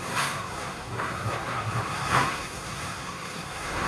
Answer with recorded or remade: remade